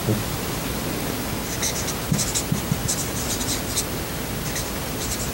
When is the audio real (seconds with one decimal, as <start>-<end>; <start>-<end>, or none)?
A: 0.0-5.3